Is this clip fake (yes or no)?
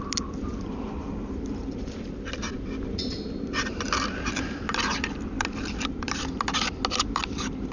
no